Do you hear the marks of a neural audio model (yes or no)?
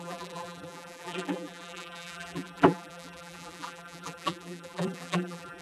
yes